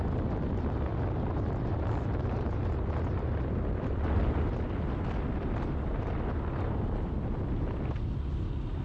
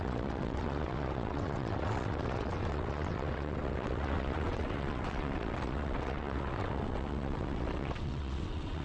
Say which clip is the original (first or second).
first